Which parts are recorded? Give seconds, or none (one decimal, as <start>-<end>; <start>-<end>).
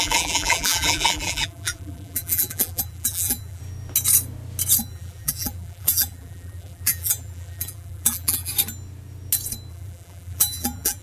3.6-4.8; 8.5-9.7